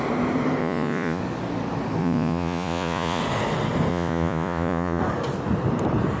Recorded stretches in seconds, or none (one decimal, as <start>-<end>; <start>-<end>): 0.0-0.6; 1.2-2.0; 3.2-3.9; 5.0-6.2